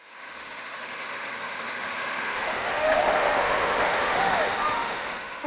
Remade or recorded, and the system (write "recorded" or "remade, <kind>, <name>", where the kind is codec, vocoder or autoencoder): remade, autoencoder, DAC-VAE